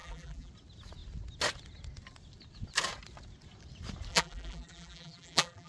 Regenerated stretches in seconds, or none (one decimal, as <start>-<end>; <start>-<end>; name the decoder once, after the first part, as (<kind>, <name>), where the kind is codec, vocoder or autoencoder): 0.0-0.5 (vocoder, BigVGAN v2); 4.1-5.7